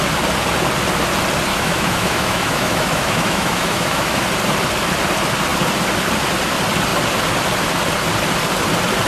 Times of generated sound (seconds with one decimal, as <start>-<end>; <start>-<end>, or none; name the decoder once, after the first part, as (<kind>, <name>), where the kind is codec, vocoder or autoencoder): 1.5-4.2 (autoencoder, DAC-VAE)